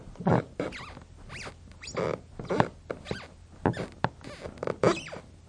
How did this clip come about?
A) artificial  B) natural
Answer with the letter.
B